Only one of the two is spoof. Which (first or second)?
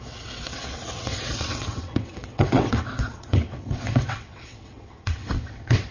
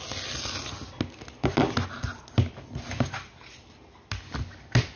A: first